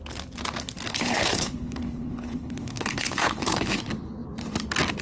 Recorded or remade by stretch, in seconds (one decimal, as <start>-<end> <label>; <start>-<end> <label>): 0.0-0.9 recorded; 0.9-3.8 remade; 3.8-5.0 recorded